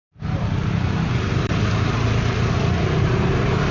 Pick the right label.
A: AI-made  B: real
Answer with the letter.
A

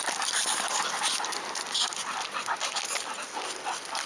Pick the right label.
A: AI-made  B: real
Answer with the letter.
B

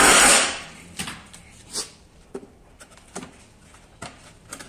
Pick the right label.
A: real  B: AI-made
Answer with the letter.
B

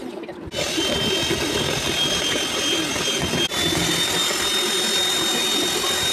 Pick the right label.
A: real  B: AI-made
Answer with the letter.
A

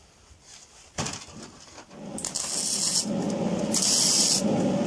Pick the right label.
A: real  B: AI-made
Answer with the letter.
A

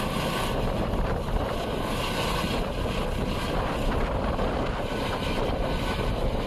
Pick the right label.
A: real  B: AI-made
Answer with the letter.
A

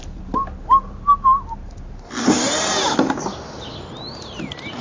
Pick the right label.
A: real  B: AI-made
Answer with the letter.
A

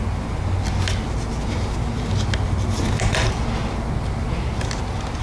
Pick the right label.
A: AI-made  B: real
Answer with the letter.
B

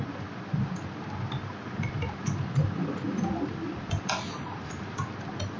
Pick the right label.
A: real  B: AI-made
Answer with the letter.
A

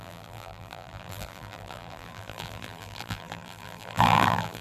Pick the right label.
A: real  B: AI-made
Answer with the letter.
B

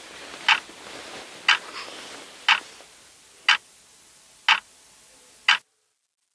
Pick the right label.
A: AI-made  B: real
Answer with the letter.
B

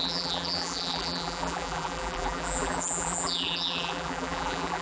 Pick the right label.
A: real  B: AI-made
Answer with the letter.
B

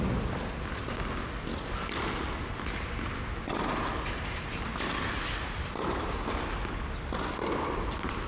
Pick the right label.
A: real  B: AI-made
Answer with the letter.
A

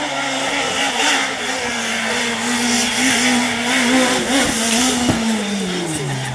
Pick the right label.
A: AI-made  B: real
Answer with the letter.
B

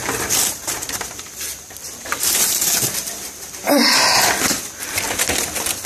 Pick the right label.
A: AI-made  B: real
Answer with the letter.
A